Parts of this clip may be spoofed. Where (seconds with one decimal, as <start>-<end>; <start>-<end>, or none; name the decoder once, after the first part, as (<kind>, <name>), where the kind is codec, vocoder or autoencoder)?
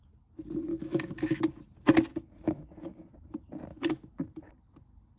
0.7-1.4 (autoencoder, DAC-VAE); 2.1-3.1; 3.7-4.5